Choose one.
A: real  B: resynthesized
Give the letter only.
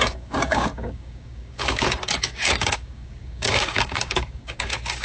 B